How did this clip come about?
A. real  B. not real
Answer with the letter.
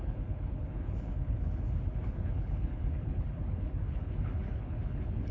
B